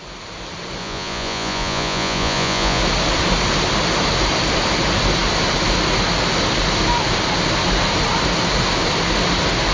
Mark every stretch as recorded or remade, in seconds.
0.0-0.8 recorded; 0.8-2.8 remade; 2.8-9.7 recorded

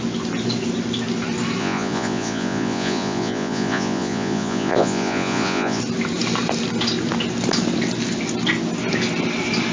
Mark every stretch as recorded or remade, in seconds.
0.0-1.6 recorded; 1.6-5.8 remade; 5.8-9.7 recorded

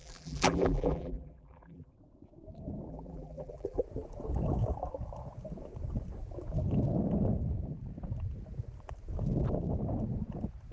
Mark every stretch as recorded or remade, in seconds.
0.0-1.9 remade; 1.9-2.9 recorded; 2.9-3.8 remade; 3.8-10.7 recorded

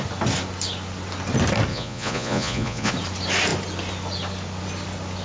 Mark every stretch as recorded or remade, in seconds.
0.0-1.7 recorded; 1.7-2.9 remade; 2.9-5.2 recorded

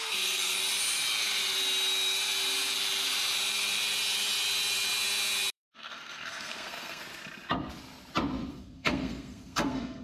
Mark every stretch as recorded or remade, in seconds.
0.0-0.6 remade; 0.6-5.5 recorded; 5.5-7.0 remade; 7.0-8.5 recorded; 8.5-10.0 remade